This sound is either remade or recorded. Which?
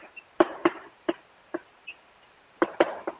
remade